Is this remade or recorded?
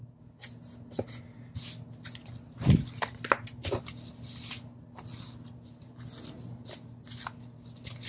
recorded